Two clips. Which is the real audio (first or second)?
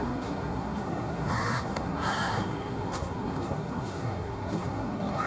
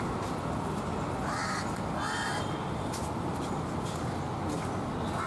second